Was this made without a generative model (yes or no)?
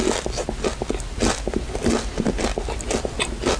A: yes